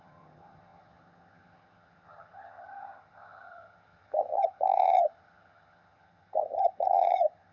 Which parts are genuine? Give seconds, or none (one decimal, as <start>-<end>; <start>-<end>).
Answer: none